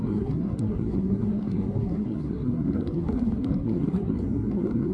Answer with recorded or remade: remade